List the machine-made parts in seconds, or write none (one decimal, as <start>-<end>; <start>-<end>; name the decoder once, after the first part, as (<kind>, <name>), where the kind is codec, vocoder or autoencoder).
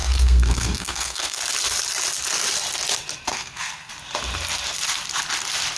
0.0-1.4 (codec, SNAC); 3.3-3.9